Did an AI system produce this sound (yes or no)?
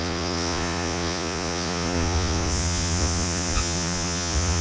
yes